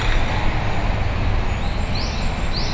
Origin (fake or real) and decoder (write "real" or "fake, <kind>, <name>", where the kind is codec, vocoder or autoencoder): real